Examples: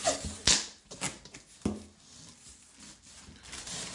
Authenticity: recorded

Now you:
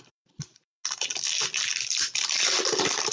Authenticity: recorded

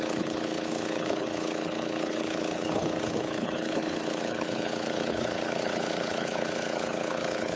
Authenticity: remade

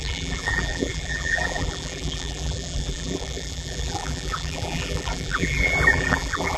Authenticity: remade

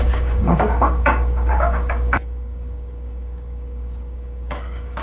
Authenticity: remade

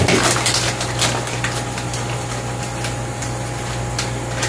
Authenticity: recorded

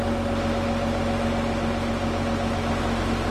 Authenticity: recorded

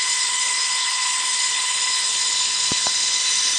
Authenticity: remade